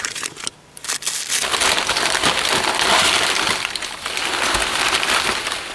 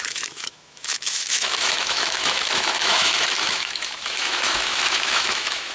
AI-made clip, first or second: second